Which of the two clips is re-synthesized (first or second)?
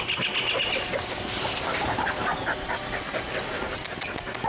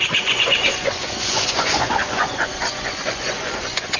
second